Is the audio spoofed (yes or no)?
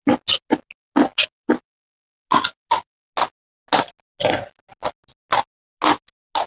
no